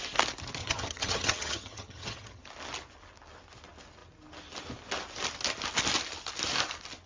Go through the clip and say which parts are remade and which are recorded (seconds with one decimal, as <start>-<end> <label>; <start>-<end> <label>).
0.0-0.6 recorded; 0.6-2.4 remade; 2.4-7.1 recorded